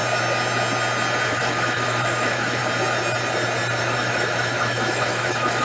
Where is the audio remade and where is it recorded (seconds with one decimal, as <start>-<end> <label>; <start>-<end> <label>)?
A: 0.0-1.3 recorded; 1.3-2.6 remade; 2.6-3.8 recorded; 3.8-5.6 remade